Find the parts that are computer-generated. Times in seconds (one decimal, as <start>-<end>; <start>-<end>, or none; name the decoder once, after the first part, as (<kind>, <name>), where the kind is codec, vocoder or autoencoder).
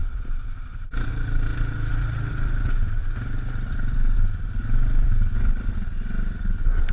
0.0-1.1 (vocoder, BigVGAN v2); 1.5-5.6